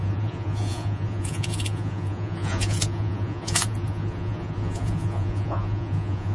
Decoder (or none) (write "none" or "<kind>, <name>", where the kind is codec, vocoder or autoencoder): vocoder, Vocos